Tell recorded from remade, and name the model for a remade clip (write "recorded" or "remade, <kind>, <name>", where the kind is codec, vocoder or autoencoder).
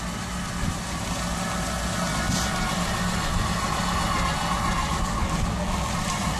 recorded